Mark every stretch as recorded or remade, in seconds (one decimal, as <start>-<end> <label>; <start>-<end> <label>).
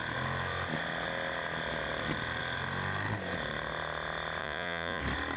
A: 0.0-4.4 recorded; 4.4-5.0 remade; 5.0-5.4 recorded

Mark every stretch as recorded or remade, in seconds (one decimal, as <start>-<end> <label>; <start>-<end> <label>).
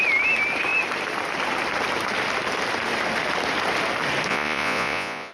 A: 0.0-4.3 recorded; 4.3-5.3 remade